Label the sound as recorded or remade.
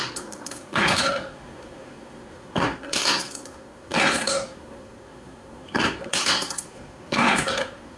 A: remade